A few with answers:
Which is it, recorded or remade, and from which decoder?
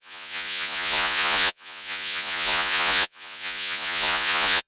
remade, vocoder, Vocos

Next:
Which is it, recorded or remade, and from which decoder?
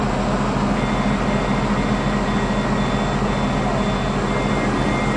recorded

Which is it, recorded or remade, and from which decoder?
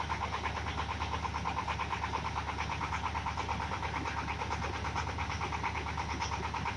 recorded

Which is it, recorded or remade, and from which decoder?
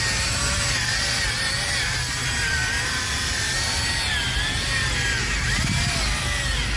recorded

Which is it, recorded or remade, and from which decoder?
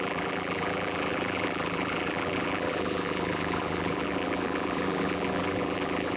remade, vocoder, BigVGAN v2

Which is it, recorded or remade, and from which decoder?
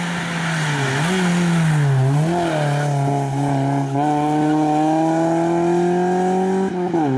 recorded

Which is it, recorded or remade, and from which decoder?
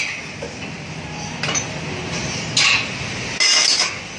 recorded